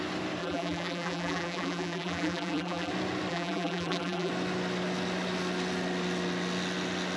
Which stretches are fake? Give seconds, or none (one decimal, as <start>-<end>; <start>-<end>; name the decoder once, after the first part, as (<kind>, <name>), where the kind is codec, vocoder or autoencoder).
0.4-2.9 (vocoder, BigVGAN v2); 3.3-4.3